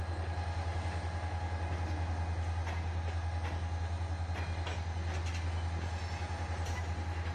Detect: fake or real real